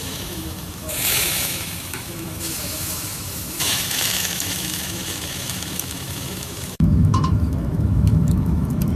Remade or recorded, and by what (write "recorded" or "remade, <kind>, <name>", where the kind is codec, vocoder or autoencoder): remade, autoencoder, DAC-VAE